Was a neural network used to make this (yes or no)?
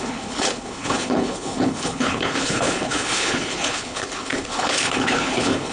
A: yes